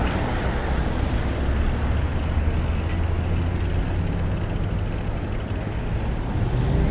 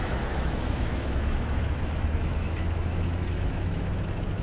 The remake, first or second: second